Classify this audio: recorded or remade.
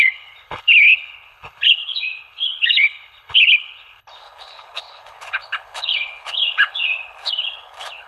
remade